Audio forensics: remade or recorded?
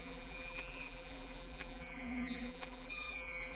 remade